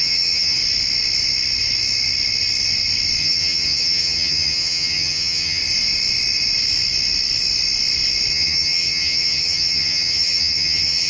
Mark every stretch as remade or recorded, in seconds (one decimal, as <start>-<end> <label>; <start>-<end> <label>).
0.0-0.6 remade; 0.6-3.2 recorded; 3.2-5.6 remade; 5.6-8.3 recorded; 8.3-11.1 remade

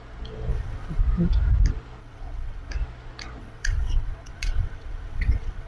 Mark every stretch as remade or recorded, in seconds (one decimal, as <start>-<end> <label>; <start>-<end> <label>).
0.0-0.5 recorded; 0.5-1.0 remade; 1.0-2.0 recorded; 2.0-2.7 remade; 2.7-3.4 recorded; 3.4-5.7 remade

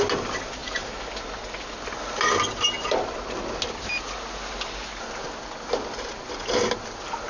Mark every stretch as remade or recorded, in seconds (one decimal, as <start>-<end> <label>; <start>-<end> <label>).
0.0-7.3 recorded

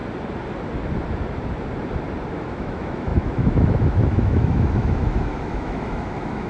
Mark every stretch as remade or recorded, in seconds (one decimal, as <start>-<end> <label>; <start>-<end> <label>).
0.0-2.3 recorded; 2.3-6.5 remade

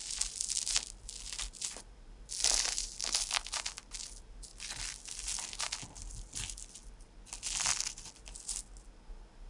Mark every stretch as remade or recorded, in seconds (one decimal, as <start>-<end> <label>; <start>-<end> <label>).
0.0-9.5 recorded

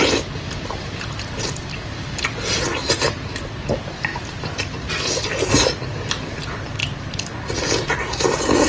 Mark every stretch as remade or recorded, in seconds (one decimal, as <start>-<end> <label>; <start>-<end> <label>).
0.0-2.7 remade; 2.7-3.4 recorded; 3.4-8.7 remade

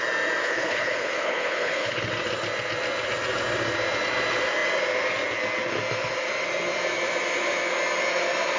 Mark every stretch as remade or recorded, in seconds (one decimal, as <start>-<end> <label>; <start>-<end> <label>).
0.0-0.4 recorded; 0.4-2.1 remade; 2.1-8.6 recorded